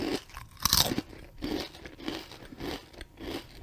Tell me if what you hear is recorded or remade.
recorded